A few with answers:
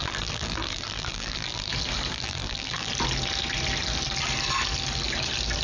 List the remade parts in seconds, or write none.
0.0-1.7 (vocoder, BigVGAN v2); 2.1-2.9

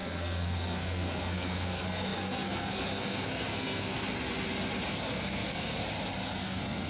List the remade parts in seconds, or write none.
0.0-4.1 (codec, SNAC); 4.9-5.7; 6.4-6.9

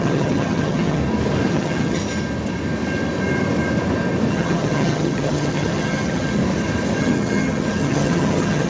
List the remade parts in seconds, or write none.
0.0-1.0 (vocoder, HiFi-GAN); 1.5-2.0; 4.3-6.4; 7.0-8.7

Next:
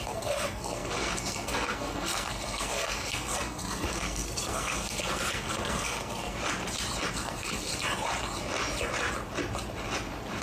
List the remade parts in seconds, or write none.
0.0-6.4 (codec, SNAC); 7.1-7.7